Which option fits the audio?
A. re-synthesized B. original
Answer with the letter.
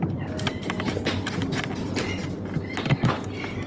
B